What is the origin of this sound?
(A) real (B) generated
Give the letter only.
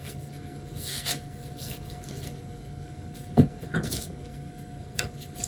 B